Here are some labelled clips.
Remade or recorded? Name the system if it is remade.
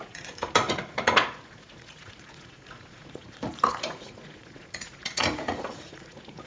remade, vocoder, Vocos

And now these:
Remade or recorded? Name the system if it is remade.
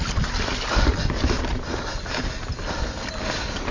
recorded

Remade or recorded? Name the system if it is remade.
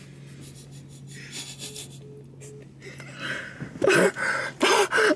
recorded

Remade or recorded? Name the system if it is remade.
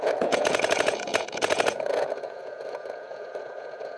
remade, vocoder, Vocos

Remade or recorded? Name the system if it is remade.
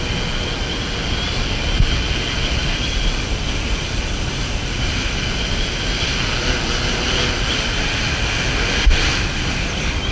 recorded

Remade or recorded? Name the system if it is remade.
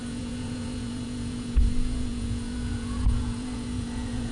remade, vocoder, Vocos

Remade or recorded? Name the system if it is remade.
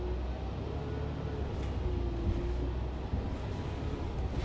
recorded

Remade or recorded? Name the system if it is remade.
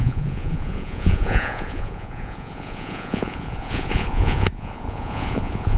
remade, vocoder, Vocos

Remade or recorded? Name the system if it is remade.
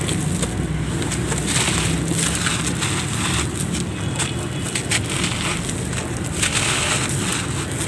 recorded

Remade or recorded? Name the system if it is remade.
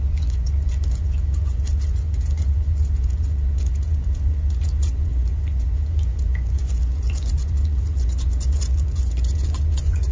remade, vocoder, Vocos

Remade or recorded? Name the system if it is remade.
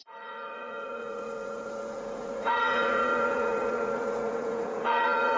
remade, vocoder, Vocos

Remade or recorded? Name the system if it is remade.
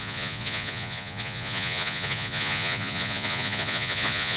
remade, vocoder, Vocos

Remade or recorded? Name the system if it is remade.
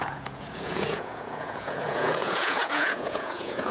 remade, vocoder, Vocos